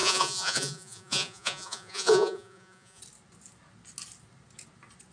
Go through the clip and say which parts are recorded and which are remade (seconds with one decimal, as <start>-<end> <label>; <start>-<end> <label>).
0.0-3.0 remade; 3.0-5.1 recorded